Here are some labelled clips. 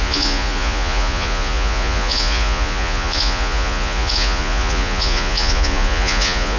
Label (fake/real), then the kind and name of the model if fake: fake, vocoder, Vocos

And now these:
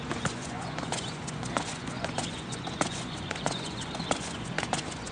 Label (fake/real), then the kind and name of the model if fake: fake, vocoder, Vocos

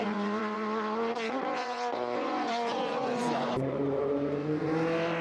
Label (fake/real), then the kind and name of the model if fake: fake, vocoder, Vocos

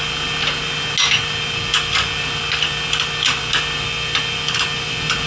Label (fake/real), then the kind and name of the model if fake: real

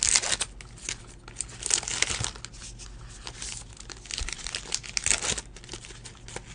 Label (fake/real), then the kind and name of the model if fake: real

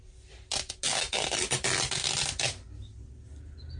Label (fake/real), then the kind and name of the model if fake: real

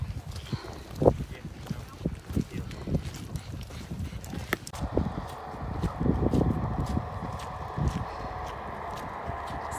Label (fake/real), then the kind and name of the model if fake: real